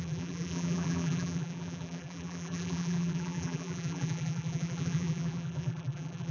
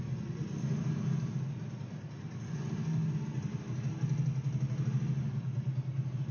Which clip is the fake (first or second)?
first